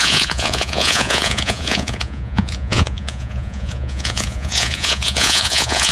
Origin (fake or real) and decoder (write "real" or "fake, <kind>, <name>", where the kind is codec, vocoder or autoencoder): fake, vocoder, Vocos